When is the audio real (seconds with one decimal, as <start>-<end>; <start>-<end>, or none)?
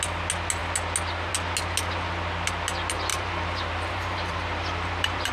0.0-3.1